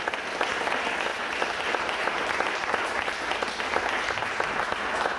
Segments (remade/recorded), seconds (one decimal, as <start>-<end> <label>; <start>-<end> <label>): 0.0-5.2 recorded